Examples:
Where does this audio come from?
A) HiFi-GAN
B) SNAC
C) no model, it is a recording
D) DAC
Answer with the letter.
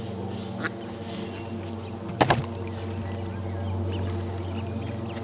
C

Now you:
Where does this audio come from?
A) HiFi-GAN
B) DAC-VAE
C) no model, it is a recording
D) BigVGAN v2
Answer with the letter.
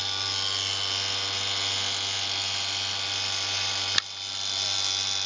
C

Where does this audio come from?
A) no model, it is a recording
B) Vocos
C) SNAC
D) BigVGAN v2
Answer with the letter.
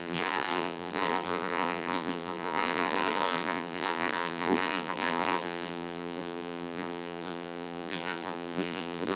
D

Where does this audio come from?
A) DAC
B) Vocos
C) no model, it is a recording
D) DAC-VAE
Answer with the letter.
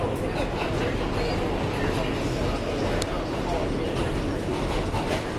C